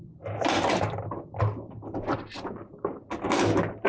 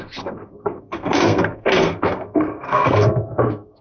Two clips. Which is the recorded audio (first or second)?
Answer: first